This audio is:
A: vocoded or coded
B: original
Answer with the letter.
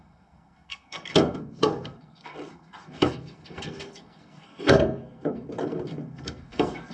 A